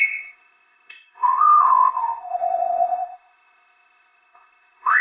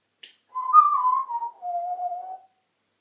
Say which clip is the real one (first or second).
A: second